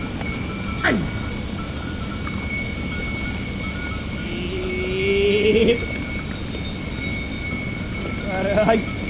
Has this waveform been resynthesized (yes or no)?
no